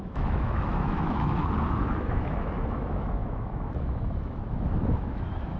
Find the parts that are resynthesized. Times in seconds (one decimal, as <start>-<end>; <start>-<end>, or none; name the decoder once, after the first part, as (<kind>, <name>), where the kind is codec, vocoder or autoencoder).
0.0-5.6 (autoencoder, DAC-VAE)